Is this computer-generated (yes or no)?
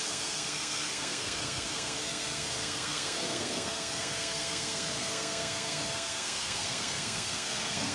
yes